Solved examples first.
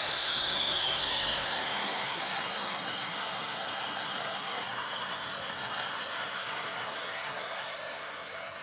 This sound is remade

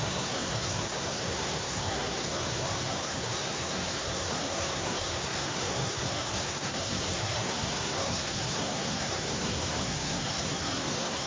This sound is remade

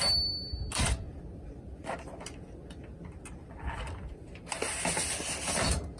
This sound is recorded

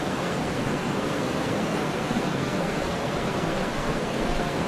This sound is remade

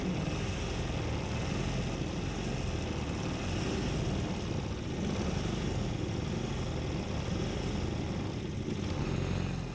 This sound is recorded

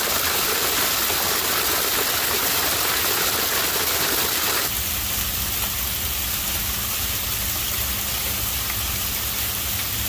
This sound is recorded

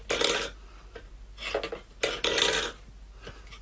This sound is recorded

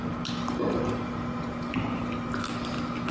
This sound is recorded